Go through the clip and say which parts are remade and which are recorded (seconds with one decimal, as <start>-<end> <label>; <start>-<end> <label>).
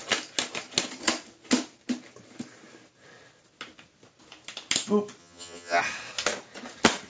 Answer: 0.0-5.2 recorded; 5.2-5.8 remade; 5.8-7.1 recorded